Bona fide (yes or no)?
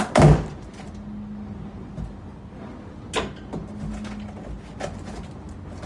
yes